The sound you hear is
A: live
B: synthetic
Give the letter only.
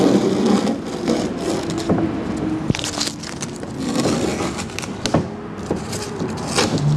A